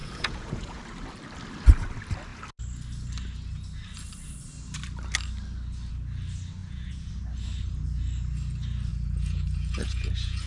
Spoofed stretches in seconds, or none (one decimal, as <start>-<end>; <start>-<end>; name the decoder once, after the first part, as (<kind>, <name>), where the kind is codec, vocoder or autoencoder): 0.0-0.8 (vocoder, Vocos); 6.6-7.1; 8.9-10.5